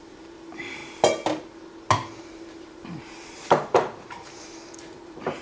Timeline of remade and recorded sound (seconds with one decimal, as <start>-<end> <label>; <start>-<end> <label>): 0.0-0.8 remade; 0.8-2.2 recorded; 2.2-5.4 remade